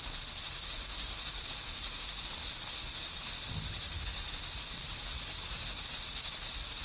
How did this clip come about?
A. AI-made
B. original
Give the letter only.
B